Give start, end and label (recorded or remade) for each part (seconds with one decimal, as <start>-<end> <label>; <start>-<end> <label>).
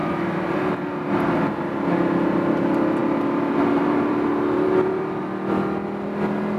0.0-3.0 recorded; 3.0-5.2 remade; 5.2-6.6 recorded